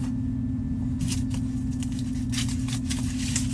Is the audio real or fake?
real